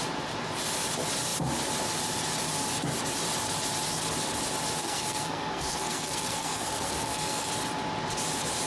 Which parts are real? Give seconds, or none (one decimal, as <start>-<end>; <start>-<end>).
0.0-4.8; 7.5-8.7